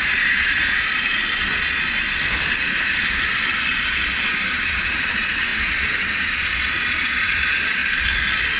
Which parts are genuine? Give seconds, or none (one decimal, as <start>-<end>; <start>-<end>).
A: 0.9-4.3; 7.8-8.6

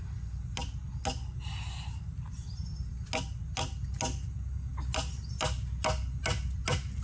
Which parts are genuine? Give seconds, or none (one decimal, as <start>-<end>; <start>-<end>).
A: 0.0-7.0